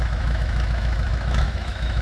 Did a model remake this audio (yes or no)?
yes